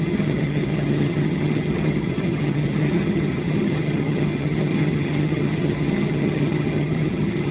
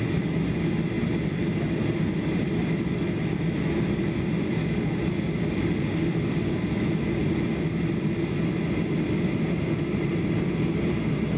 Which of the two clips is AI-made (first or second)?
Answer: first